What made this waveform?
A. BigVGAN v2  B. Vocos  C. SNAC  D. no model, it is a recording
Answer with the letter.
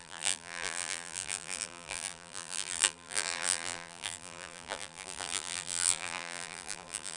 A